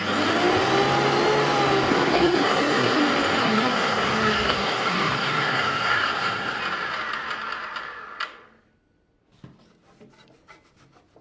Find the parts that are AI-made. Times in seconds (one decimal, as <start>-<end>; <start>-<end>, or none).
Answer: 1.9-3.0; 3.4-6.6